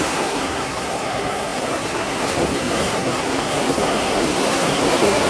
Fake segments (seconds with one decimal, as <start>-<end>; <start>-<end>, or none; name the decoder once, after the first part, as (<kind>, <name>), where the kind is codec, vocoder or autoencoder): 0.0-5.3 (codec, SNAC)